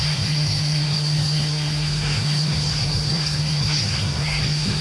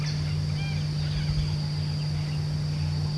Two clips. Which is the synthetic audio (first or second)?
first